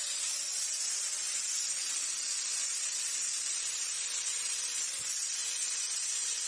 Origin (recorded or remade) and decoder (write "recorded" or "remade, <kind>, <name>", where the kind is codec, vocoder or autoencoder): recorded